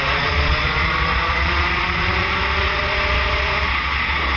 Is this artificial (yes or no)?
yes